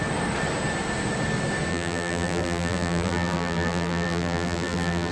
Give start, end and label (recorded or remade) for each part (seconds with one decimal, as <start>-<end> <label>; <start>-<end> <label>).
0.0-1.7 recorded; 1.7-5.1 remade